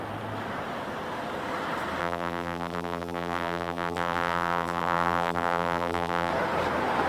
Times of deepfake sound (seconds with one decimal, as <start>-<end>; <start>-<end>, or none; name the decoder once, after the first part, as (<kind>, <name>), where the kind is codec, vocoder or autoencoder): 2.0-6.3 (vocoder, BigVGAN v2)